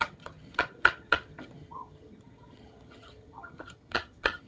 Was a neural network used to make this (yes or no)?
yes